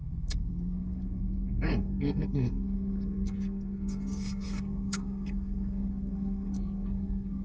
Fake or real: fake